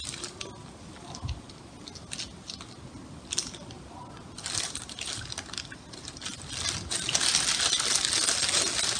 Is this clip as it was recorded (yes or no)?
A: yes